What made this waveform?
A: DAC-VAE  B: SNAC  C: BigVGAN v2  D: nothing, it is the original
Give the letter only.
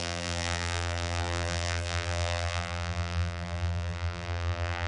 C